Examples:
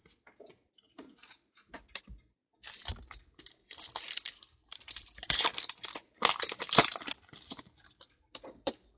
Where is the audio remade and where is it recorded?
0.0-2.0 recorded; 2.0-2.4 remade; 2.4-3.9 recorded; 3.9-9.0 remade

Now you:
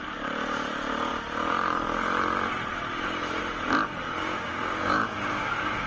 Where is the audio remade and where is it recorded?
0.0-4.2 recorded; 4.2-5.9 remade